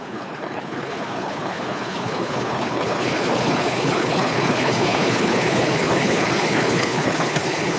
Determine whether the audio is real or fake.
fake